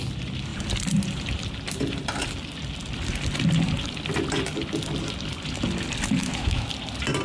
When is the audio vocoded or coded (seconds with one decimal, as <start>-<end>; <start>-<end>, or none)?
6.2-6.7